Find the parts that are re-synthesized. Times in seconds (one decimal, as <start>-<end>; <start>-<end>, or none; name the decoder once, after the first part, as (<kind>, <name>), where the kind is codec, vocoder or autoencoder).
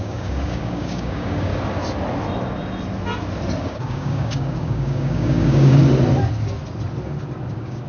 0.0-1.5 (codec, DAC); 3.6-5.8; 7.5-7.9